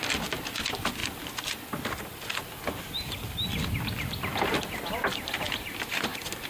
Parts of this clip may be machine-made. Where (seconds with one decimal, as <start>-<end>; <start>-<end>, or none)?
none